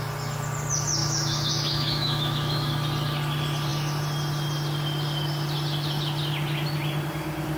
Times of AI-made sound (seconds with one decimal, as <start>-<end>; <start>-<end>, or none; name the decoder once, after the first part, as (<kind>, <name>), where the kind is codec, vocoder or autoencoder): 1.0-2.7 (autoencoder, DAC-VAE)